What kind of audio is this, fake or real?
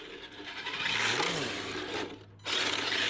real